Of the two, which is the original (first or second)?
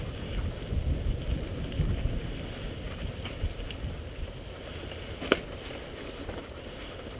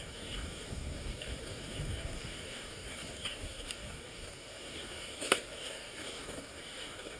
first